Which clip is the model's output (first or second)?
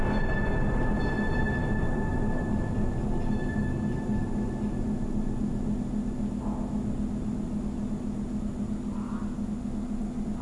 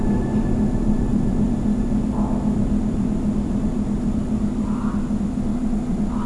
second